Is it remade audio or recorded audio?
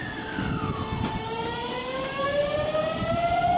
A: recorded